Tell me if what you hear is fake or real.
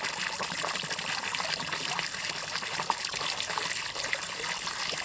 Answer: real